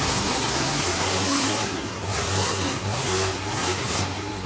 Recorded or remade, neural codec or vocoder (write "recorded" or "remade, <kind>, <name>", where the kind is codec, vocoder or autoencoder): remade, codec, SNAC